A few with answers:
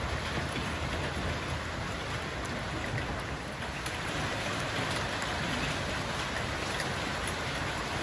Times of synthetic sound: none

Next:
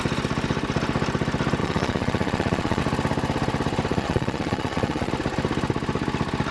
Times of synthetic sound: 1.6-2.8; 3.9-5.1

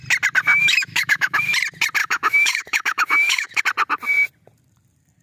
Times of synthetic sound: 0.5-1.5; 2.0-3.6